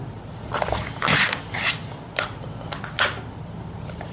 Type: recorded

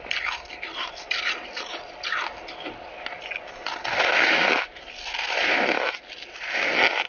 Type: recorded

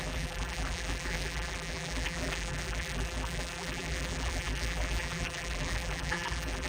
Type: remade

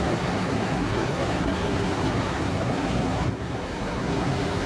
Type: remade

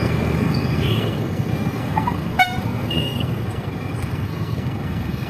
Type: remade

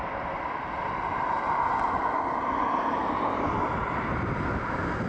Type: recorded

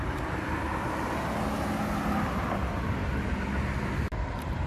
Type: recorded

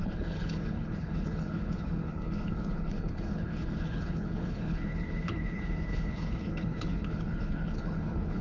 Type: remade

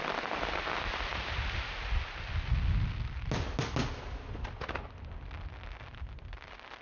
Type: recorded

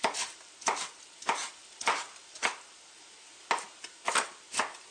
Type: recorded